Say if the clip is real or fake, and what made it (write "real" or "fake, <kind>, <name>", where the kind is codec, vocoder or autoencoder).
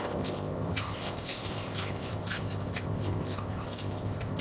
fake, codec, ZipCodec